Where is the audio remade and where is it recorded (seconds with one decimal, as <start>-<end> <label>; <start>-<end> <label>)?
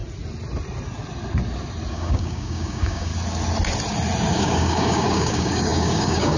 0.0-1.9 recorded; 1.9-3.1 remade; 3.1-4.3 recorded; 4.3-6.4 remade